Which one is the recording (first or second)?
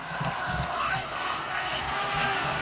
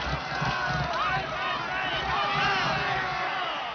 second